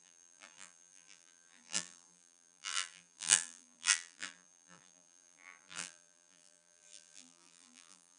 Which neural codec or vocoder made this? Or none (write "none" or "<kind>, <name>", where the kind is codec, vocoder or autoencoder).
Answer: vocoder, BigVGAN v2